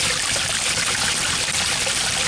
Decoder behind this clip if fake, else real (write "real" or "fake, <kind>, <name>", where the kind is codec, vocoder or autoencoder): fake, vocoder, BigVGAN v2